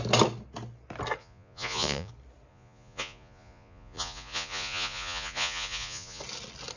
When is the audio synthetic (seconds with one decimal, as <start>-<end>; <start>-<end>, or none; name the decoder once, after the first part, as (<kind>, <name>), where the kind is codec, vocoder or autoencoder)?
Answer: 1.2-2.1 (vocoder, Vocos); 2.5-6.2